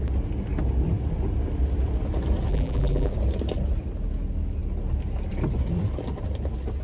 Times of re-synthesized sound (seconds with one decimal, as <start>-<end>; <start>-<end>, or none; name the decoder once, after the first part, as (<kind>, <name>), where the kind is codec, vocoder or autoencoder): 2.5-3.1 (vocoder, BigVGAN v2)

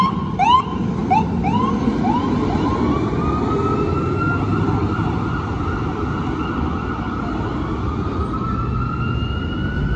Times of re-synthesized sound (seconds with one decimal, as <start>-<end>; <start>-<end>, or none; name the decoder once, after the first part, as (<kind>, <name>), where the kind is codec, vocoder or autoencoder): none

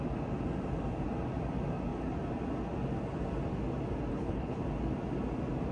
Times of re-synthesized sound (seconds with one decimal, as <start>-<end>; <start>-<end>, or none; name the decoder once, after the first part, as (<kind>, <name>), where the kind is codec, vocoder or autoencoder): 4.1-4.6 (codec, HILCodec)

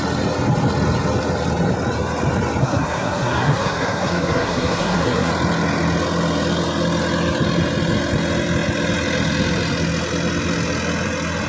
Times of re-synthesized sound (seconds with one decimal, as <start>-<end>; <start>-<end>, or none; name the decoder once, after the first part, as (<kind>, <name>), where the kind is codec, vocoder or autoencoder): 2.6-5.3 (codec, SNAC)

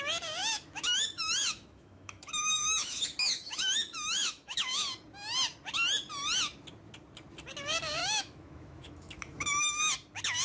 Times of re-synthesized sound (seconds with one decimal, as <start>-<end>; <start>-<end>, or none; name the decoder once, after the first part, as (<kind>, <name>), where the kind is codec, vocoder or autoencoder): 0.4-4.8 (autoencoder, DAC-VAE); 8.0-9.8

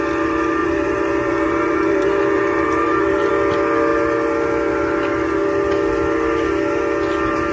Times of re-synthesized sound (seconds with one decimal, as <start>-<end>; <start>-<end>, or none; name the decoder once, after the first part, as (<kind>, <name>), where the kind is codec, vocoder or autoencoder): 0.6-3.3 (vocoder, BigVGAN v2)

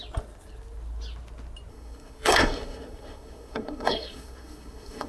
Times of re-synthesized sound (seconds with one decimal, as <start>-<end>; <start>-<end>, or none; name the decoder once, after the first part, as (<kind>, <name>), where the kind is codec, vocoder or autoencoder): 1.7-5.1 (codec, SNAC)

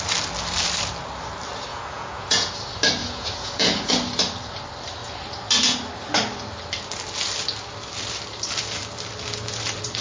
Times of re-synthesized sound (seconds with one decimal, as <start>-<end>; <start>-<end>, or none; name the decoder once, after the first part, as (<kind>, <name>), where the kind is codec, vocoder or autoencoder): 1.7-2.5 (vocoder, Vocos); 3.0-3.9